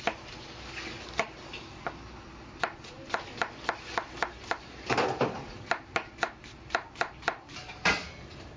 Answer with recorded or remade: recorded